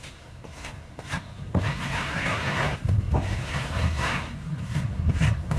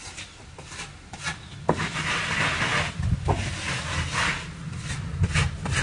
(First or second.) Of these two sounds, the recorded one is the second